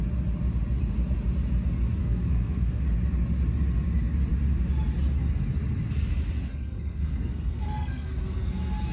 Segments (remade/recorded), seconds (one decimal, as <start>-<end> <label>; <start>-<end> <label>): 0.0-2.0 recorded; 2.0-2.8 remade; 2.8-6.5 recorded; 6.5-8.5 remade; 8.5-8.9 recorded